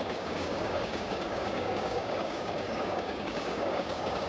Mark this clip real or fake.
fake